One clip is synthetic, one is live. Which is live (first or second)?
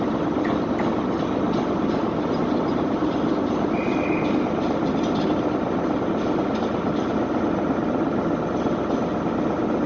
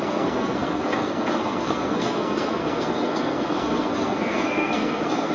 first